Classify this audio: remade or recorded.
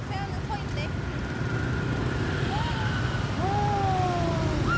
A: recorded